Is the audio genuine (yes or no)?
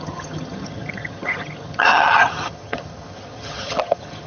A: no